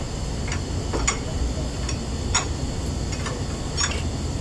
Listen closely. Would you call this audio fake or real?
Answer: real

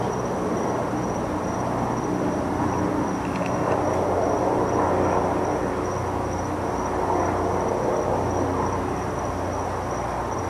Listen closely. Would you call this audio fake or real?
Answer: real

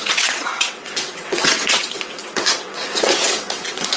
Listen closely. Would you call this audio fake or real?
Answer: fake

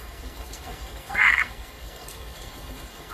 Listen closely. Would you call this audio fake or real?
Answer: fake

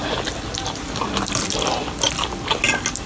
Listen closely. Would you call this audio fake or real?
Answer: real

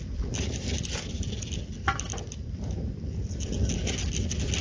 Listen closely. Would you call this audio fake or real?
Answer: real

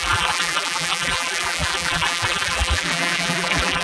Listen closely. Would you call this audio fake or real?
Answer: fake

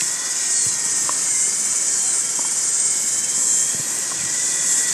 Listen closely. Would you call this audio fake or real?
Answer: real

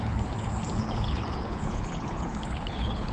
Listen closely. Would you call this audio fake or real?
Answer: fake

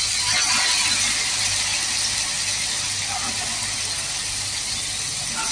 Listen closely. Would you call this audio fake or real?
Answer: real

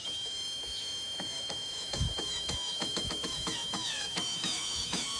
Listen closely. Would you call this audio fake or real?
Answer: fake